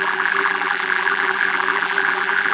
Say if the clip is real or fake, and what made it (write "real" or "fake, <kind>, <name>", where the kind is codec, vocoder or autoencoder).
fake, vocoder, BigVGAN v2